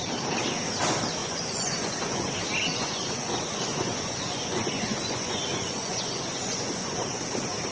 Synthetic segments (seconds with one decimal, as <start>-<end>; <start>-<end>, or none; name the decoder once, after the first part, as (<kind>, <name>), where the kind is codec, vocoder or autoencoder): 1.2-2.3 (vocoder, Vocos); 2.7-7.2

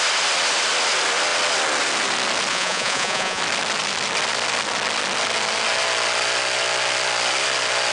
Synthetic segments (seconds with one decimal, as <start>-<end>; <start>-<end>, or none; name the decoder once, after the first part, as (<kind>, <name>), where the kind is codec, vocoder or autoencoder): 2.5-3.4 (vocoder, Vocos)

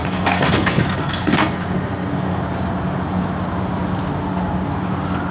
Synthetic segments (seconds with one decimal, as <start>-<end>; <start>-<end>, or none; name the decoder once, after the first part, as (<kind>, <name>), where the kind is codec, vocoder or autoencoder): 0.0-2.4 (codec, SNAC)